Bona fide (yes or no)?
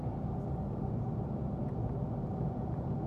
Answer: yes